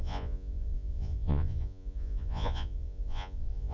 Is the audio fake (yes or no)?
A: yes